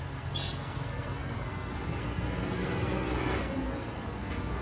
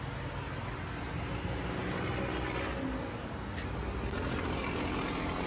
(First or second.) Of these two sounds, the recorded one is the second